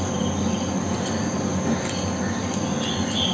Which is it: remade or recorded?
recorded